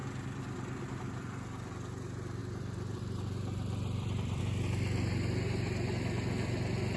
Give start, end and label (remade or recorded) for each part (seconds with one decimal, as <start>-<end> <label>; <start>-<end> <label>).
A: 0.0-1.7 remade; 1.7-2.4 recorded; 2.4-4.4 remade; 4.4-7.0 recorded